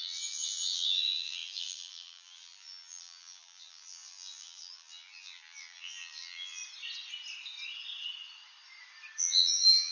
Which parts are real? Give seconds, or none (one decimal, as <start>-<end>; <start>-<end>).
6.6-9.2